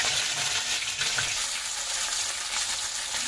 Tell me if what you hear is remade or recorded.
recorded